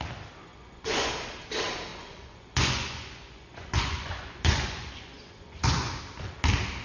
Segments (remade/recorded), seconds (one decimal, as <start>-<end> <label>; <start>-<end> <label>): 0.0-0.5 recorded; 0.5-1.1 remade; 1.1-1.9 recorded; 1.9-6.0 remade; 6.0-6.8 recorded